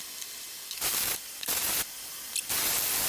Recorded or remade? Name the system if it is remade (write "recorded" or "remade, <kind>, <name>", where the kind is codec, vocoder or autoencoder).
recorded